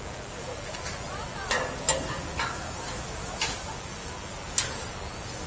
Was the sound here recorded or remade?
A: recorded